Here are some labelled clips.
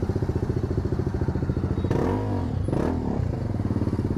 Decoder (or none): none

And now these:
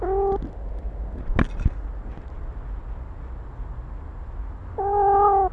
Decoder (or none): none